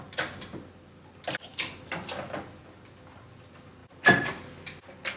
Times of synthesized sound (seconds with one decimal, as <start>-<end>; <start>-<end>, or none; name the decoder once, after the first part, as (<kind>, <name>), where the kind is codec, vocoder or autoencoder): none